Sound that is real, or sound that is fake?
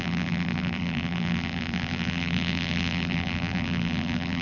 fake